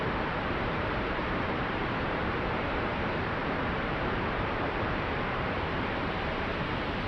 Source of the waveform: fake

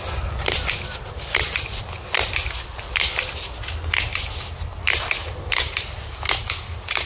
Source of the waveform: real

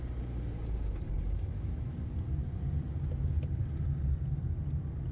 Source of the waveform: real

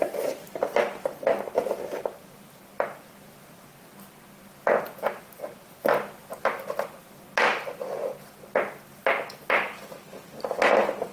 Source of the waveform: real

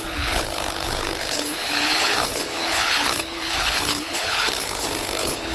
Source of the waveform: fake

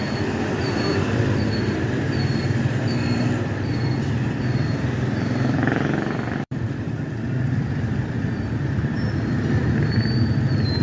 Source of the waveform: fake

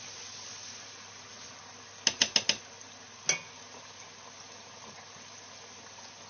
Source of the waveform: real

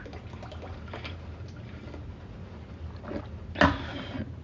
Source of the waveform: real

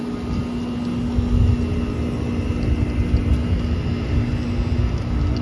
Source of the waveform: real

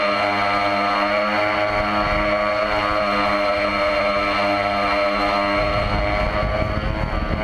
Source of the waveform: real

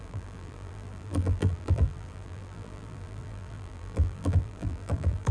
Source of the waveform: fake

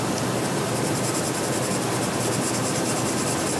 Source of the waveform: real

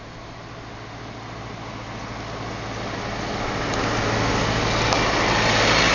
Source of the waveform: real